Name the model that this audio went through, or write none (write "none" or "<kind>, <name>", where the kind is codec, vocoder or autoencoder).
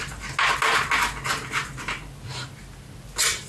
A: none